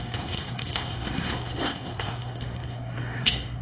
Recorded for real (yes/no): no